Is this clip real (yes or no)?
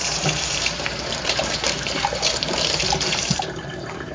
no